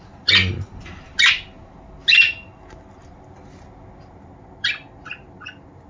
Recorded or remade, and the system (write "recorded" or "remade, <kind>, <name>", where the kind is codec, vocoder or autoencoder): recorded